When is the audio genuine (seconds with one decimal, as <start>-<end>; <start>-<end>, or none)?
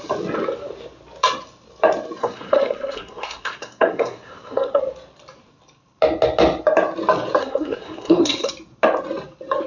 0.0-2.2; 4.8-7.4; 8.5-9.7